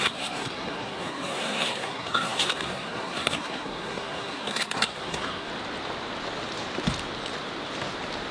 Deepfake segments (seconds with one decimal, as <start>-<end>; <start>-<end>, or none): 0.0-5.5